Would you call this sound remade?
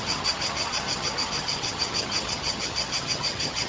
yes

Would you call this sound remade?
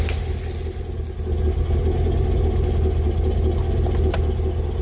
no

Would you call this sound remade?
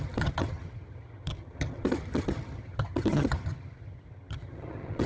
yes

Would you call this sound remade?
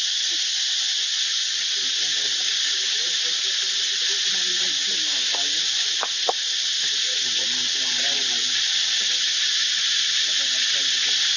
no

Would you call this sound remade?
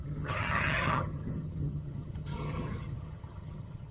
yes